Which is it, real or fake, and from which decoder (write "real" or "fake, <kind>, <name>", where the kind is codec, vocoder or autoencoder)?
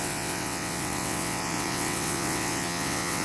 fake, vocoder, WaveNeXt